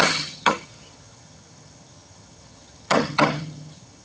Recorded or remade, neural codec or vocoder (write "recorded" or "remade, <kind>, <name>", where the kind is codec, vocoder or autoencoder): remade, vocoder, HiFi-GAN